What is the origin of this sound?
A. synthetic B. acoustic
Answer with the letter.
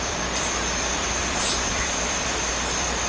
A